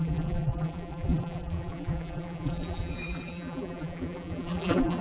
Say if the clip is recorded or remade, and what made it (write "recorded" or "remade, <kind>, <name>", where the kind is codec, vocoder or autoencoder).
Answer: remade, vocoder, BigVGAN v2